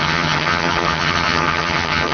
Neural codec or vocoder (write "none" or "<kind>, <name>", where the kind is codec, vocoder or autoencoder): vocoder, HiFi-GAN